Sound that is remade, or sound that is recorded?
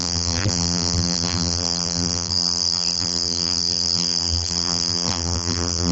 remade